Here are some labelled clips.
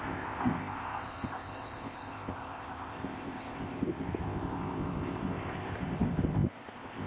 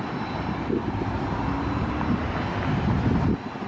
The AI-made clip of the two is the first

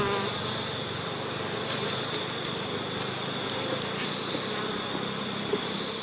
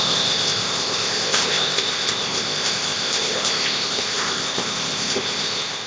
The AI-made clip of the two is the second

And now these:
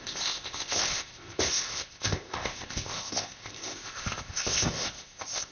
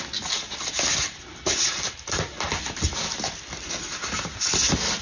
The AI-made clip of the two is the first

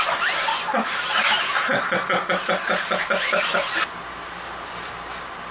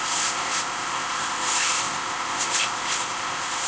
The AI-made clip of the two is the second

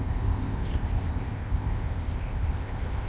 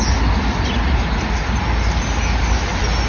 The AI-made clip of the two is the first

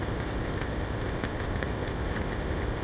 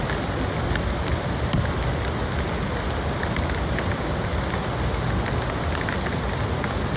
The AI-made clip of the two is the first